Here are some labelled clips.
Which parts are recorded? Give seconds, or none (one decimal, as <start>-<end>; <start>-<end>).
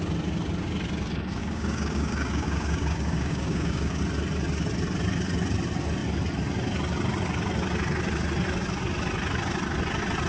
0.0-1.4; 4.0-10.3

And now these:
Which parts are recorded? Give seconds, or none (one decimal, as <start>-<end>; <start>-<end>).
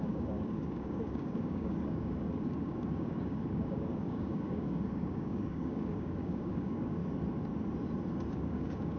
7.0-8.3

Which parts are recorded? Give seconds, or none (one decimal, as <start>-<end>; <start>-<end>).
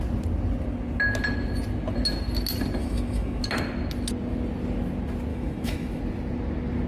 0.0-2.8; 3.4-5.3; 6.0-6.9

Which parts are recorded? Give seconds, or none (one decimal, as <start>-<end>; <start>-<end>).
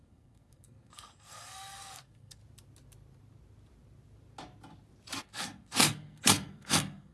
2.4-5.2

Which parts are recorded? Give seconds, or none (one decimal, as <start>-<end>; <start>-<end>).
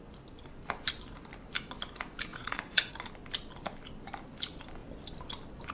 0.0-2.3; 2.9-5.7